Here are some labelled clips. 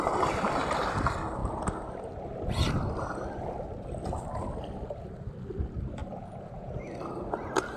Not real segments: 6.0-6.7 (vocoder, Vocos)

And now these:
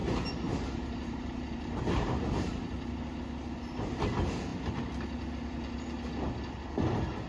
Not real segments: 0.0-3.2 (vocoder, BigVGAN v2)